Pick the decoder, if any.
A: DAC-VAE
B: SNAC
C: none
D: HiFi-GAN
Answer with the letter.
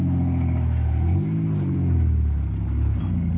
C